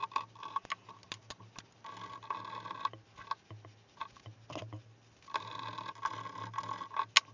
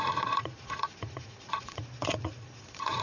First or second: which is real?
first